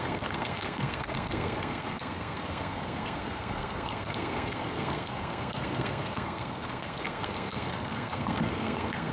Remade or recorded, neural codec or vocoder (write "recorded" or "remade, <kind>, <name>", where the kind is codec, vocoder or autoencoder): remade, codec, SNAC